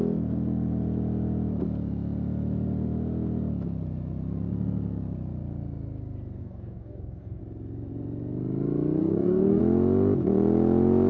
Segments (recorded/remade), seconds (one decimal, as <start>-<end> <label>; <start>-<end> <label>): 0.0-6.4 recorded; 6.4-7.4 remade; 7.4-9.0 recorded; 9.0-9.6 remade; 9.6-11.1 recorded